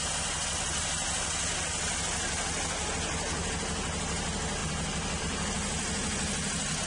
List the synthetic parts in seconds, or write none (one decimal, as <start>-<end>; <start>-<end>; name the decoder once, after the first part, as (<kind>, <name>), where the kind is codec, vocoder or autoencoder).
none